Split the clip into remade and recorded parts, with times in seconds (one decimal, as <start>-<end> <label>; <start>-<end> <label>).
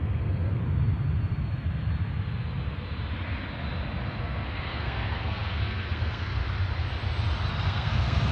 0.0-0.6 remade; 0.6-4.2 recorded; 4.2-6.4 remade; 6.4-7.5 recorded; 7.5-8.3 remade